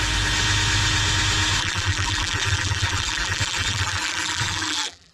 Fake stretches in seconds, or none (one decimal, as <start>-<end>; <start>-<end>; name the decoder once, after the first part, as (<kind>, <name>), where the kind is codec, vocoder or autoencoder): 1.6-5.1 (vocoder, BigVGAN v2)